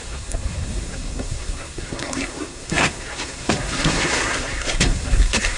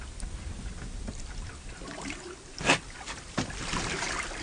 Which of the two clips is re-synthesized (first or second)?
first